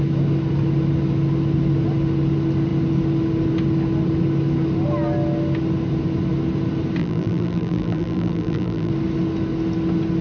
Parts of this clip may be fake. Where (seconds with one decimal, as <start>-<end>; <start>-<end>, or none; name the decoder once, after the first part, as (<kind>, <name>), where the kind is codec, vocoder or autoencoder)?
7.0-8.9 (vocoder, BigVGAN v2)